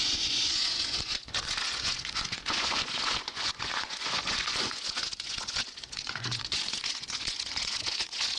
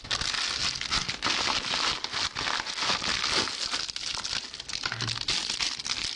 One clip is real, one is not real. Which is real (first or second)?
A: second